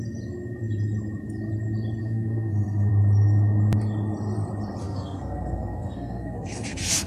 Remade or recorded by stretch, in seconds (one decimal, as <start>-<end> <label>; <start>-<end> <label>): 0.0-2.0 recorded; 2.0-2.9 remade; 2.9-4.8 recorded; 4.8-7.1 remade